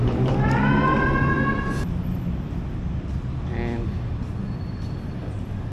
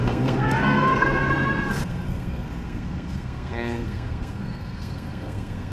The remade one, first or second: second